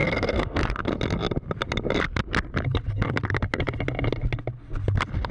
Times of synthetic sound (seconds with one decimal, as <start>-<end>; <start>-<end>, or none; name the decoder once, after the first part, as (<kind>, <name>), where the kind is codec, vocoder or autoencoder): 0.0-0.6 (codec, SNAC)